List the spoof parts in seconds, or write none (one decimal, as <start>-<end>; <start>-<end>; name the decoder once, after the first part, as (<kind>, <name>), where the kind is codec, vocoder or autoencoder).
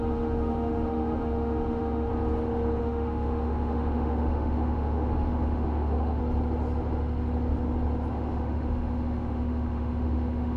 0.0-2.1 (autoencoder, DAC-VAE); 2.8-6.2; 8.1-10.6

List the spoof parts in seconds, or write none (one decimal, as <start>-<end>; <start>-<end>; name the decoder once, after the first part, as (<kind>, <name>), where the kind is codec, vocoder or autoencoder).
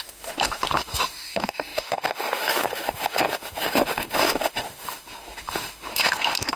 0.0-6.6 (autoencoder, DAC-VAE)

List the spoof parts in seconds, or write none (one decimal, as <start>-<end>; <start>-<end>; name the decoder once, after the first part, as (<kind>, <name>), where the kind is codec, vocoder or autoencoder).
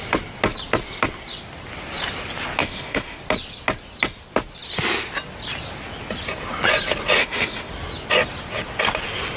2.6-3.2 (autoencoder, DAC-VAE); 7.2-7.7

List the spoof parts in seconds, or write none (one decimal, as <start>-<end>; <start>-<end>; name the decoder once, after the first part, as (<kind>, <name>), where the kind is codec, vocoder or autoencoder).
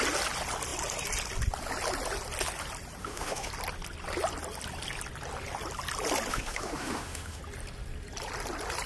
3.0-3.5 (autoencoder, DAC-VAE); 6.3-7.4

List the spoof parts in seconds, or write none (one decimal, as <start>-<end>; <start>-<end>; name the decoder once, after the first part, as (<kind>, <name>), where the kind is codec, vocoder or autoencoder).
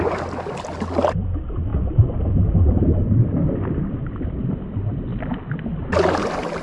none